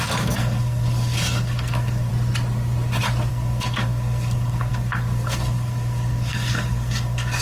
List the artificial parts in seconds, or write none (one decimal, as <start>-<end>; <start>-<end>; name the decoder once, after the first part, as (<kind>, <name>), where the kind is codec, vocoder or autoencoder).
0.0-2.1 (codec, SNAC); 3.3-7.4